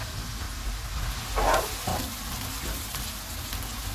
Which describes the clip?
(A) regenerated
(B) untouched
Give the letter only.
B